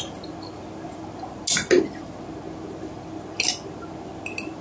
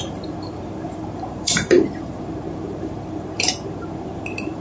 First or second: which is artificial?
second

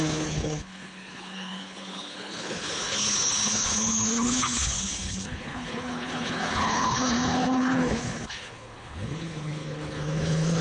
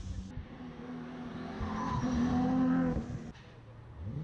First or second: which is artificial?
first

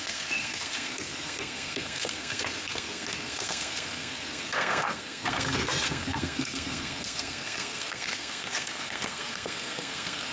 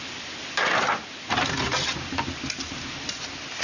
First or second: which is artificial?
first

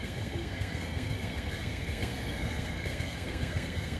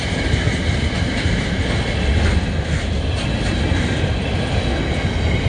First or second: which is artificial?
first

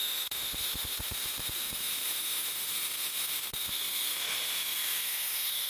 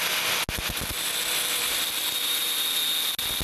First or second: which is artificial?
first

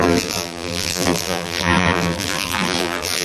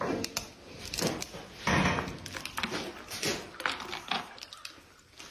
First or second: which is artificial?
first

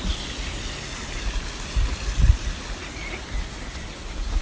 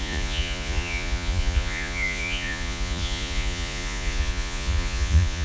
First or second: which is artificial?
second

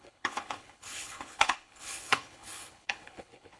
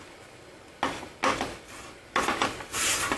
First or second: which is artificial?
first